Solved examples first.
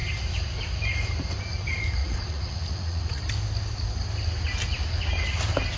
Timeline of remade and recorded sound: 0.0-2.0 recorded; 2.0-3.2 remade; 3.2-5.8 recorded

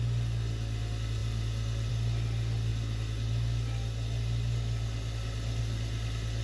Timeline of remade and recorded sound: 0.0-6.4 recorded

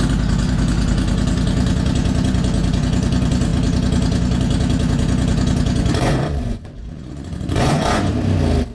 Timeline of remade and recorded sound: 0.0-8.1 remade; 8.1-8.7 recorded